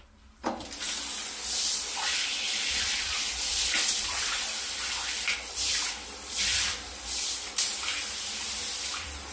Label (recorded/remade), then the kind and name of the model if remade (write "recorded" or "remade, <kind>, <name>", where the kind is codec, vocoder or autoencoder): recorded